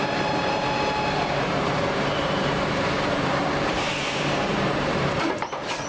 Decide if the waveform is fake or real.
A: fake